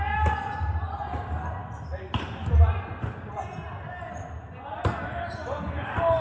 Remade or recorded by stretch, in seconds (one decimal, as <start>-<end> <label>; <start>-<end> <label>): 0.0-6.2 recorded